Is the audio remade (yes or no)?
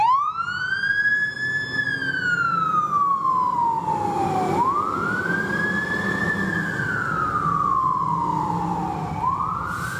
no